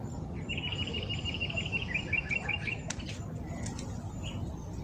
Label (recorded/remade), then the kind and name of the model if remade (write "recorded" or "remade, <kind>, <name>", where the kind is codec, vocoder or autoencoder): recorded